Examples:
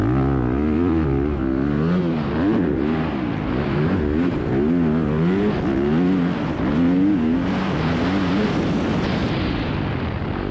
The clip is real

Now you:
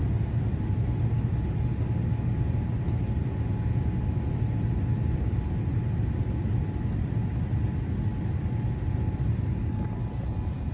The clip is real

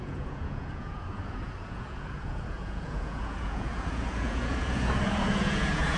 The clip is fake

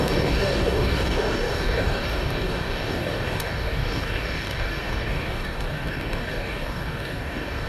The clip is fake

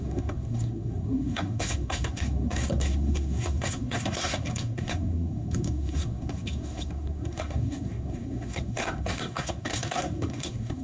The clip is fake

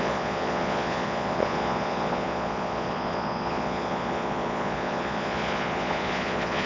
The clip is fake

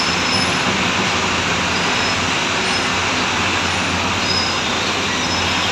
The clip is real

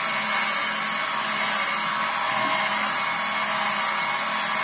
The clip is real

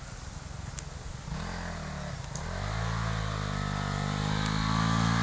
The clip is real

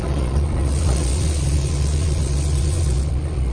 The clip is fake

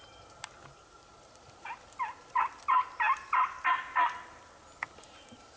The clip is real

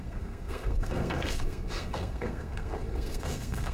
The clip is fake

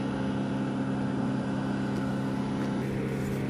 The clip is real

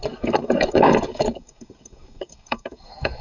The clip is fake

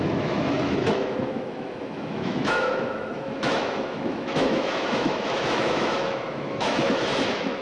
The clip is fake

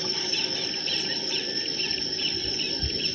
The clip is fake